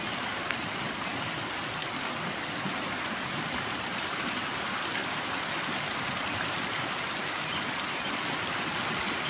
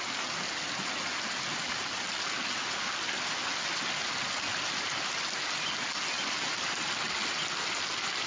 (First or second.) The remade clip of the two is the first